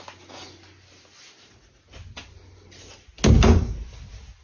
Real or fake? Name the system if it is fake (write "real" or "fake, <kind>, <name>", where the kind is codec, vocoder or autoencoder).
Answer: real